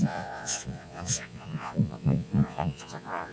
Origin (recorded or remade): remade